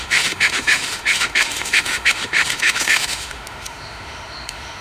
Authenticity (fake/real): fake